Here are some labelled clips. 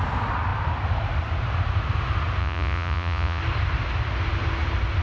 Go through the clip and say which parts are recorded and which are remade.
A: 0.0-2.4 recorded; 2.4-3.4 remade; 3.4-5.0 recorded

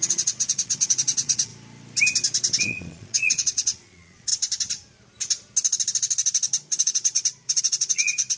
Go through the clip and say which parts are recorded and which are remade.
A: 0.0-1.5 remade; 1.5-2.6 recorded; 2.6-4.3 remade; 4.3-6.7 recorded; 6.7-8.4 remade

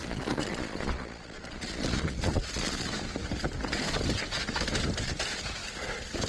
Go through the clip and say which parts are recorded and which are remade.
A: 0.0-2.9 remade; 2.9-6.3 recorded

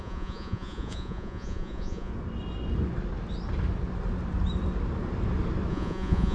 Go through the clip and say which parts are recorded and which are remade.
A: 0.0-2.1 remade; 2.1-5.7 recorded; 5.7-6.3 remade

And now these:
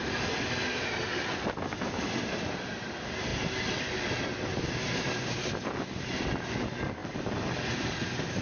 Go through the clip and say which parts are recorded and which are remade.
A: 0.0-8.4 recorded

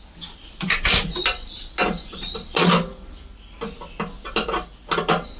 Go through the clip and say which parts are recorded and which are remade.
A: 0.0-2.1 recorded; 2.1-2.7 remade; 2.7-5.4 recorded